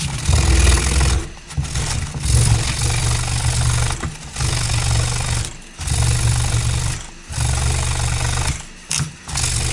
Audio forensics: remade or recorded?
recorded